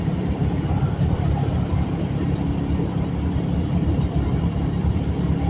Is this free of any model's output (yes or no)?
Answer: no